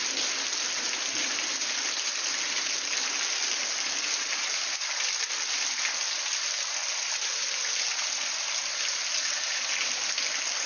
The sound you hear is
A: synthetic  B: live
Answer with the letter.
B